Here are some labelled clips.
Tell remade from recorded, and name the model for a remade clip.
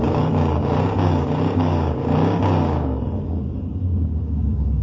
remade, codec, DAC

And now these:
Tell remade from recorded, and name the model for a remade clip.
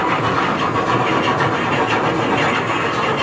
recorded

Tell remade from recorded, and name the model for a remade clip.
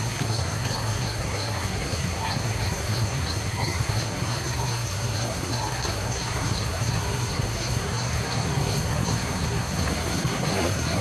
remade, codec, SNAC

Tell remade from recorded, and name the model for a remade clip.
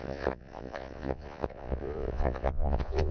remade, vocoder, Vocos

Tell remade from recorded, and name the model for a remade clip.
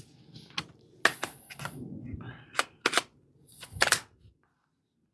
recorded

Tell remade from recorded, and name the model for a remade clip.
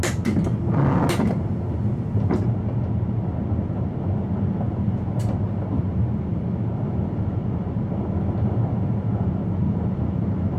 recorded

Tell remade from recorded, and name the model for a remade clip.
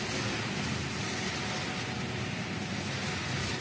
recorded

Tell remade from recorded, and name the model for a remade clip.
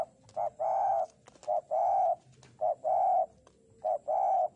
recorded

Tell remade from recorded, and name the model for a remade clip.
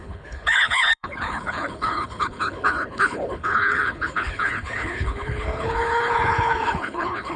remade, codec, HILCodec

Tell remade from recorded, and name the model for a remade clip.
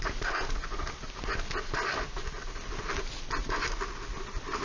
recorded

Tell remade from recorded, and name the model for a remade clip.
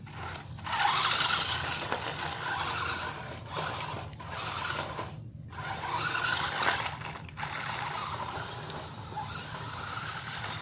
recorded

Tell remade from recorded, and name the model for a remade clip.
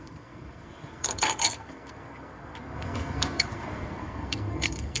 remade, codec, SNAC